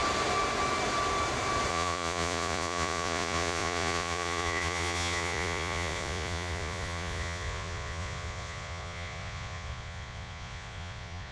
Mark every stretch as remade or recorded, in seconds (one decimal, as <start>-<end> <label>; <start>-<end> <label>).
0.0-1.7 recorded; 1.7-11.3 remade